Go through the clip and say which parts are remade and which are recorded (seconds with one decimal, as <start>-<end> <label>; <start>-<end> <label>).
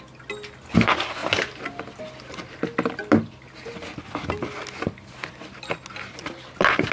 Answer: 0.0-6.9 recorded